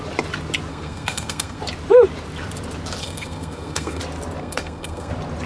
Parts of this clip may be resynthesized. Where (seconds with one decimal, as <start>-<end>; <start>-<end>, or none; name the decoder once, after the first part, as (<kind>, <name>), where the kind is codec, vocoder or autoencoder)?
0.7-1.6 (codec, SNAC); 3.0-4.0; 4.4-5.1

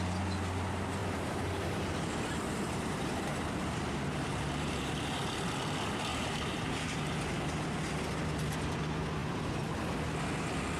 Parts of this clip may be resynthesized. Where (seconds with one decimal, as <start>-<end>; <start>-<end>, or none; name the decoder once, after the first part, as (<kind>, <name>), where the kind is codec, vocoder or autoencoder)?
1.0-5.3 (vocoder, BigVGAN v2); 6.1-7.1

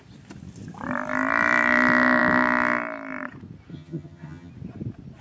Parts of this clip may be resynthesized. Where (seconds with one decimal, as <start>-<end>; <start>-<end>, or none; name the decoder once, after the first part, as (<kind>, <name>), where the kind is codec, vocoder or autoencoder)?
3.7-4.5 (vocoder, HiFi-GAN)

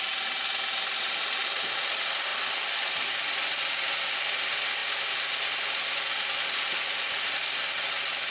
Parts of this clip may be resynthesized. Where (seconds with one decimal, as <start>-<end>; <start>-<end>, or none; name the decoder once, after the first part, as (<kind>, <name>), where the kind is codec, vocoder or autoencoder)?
none

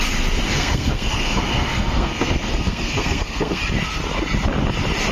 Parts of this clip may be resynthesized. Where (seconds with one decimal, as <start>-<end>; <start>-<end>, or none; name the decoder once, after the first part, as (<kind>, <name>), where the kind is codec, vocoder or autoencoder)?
0.5-3.6 (codec, SNAC)

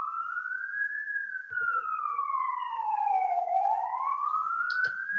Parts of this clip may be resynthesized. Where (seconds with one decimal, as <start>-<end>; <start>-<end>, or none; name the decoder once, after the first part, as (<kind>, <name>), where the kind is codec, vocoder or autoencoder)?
none

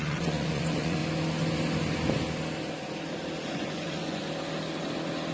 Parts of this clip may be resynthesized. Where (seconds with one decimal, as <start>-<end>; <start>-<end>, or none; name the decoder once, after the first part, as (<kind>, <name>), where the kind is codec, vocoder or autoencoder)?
0.0-1.0 (vocoder, Vocos); 3.5-4.2